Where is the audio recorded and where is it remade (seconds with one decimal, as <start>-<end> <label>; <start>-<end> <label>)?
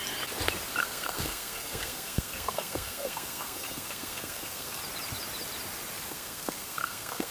0.0-0.8 recorded; 0.8-4.8 remade; 4.8-6.1 recorded; 6.1-7.3 remade